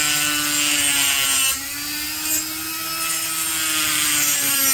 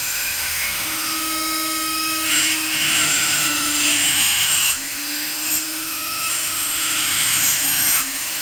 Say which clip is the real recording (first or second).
first